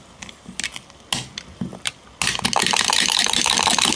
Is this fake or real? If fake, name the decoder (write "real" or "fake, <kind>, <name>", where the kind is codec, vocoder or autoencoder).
real